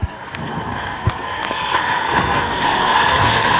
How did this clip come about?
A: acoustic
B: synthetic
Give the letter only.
B